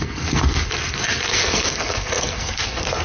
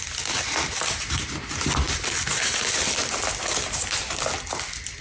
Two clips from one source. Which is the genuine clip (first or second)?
second